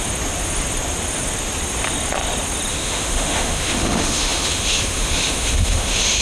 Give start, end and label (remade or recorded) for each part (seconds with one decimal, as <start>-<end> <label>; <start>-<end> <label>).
0.0-2.7 recorded; 2.7-6.2 remade